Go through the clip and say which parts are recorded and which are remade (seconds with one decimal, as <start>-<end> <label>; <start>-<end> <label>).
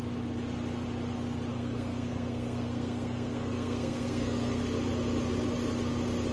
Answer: 0.0-1.5 recorded; 1.5-4.6 remade; 4.6-6.3 recorded